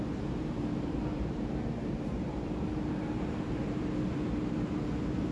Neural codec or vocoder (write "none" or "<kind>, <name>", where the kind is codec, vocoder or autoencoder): vocoder, BigVGAN v2